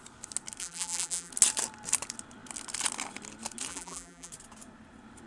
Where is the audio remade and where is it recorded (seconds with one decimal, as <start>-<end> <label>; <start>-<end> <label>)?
0.0-0.6 recorded; 0.6-1.3 remade; 1.3-3.7 recorded; 3.7-4.3 remade; 4.3-5.3 recorded